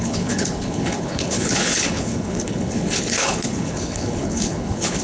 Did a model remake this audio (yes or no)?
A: yes